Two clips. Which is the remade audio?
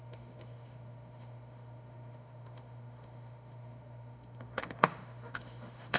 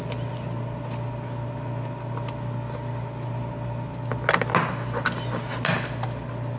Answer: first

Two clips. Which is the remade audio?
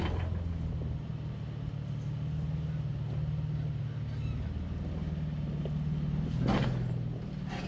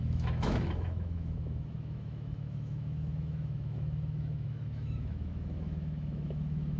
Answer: second